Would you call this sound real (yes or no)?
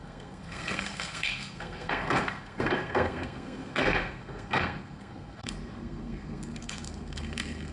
no